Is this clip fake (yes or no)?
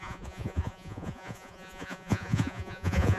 yes